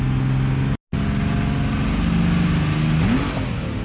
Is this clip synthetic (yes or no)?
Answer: no